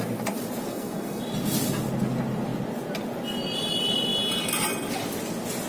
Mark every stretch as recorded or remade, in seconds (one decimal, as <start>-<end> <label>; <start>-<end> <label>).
0.0-0.7 recorded; 0.7-1.2 remade; 1.2-5.7 recorded